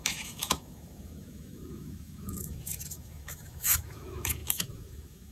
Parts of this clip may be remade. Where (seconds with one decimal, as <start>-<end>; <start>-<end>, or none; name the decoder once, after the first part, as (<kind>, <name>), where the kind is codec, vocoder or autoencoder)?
0.0-5.3 (autoencoder, DAC-VAE)